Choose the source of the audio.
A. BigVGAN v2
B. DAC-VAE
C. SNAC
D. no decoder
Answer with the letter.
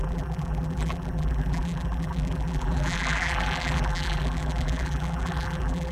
A